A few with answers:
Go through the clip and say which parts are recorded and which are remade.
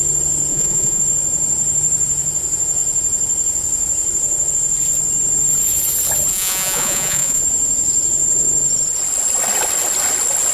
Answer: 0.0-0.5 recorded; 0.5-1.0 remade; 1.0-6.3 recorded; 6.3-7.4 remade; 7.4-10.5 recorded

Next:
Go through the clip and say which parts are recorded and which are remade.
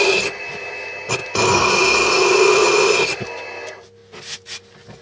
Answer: 0.0-5.0 recorded